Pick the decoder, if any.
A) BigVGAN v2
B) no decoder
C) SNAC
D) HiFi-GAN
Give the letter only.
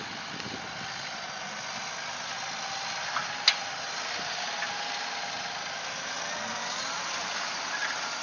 B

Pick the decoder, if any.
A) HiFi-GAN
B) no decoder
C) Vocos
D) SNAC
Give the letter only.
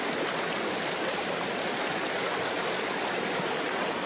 B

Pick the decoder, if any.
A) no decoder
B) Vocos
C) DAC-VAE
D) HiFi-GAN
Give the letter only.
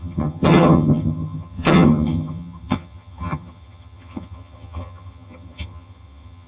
D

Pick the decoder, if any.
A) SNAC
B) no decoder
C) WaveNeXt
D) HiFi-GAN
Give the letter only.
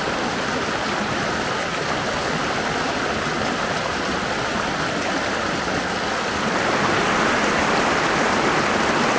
B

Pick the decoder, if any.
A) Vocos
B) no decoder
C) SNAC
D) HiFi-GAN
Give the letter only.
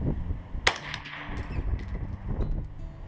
B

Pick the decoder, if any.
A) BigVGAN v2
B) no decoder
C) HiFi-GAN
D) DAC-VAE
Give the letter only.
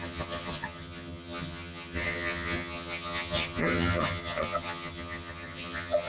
C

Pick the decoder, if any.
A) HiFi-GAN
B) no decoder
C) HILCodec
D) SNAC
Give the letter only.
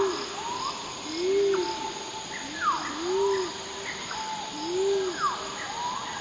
B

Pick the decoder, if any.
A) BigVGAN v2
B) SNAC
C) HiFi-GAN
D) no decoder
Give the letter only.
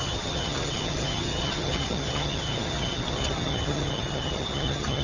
C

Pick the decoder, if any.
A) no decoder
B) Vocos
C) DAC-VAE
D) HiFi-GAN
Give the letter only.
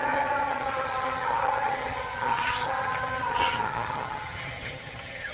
D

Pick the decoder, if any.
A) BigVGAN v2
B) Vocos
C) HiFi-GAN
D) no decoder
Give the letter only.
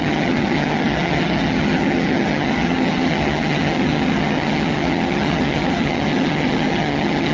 C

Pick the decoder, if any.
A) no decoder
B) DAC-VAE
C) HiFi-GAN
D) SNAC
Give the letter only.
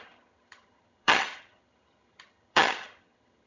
C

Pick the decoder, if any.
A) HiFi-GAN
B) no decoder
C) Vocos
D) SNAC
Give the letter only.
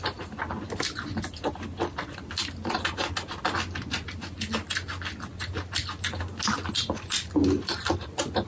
B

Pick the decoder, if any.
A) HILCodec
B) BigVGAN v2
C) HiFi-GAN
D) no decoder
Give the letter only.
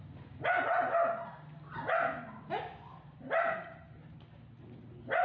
D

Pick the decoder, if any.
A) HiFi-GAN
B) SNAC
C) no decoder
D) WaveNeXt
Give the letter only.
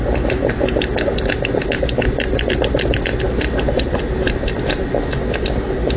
C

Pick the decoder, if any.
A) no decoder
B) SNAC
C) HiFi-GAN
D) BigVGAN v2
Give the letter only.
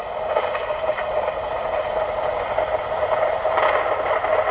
A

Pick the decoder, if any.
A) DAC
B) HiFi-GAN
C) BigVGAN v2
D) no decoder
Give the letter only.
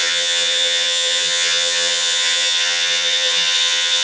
B